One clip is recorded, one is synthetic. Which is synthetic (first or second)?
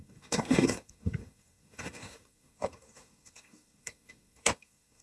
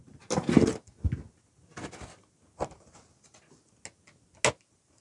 first